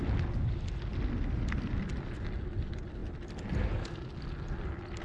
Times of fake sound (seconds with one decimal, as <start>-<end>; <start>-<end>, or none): none